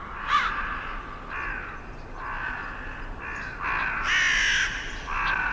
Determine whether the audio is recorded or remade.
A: recorded